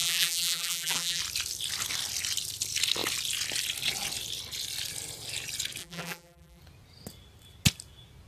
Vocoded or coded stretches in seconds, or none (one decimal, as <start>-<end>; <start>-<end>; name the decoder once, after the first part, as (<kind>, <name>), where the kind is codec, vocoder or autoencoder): 0.0-1.2 (vocoder, BigVGAN v2); 5.8-6.6